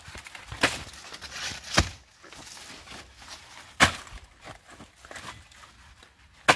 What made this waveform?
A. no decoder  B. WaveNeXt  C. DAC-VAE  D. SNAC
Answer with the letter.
A